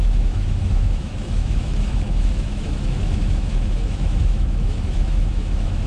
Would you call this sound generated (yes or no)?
yes